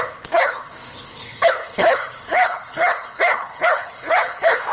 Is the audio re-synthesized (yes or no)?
yes